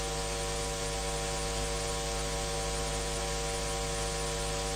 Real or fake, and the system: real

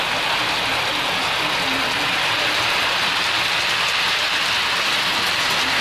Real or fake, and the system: real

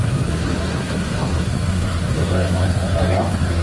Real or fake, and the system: fake, codec, SNAC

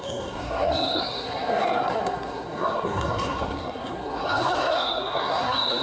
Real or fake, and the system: fake, codec, SNAC